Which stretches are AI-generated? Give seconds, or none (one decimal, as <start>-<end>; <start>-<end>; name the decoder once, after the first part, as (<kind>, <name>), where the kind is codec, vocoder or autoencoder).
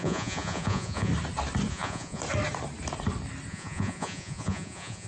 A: 0.0-1.1 (vocoder, Vocos); 1.7-2.2; 3.5-5.1